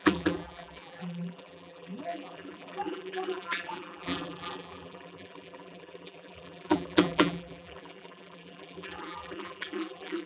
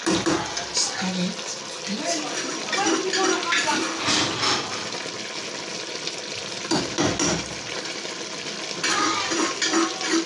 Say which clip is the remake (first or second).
first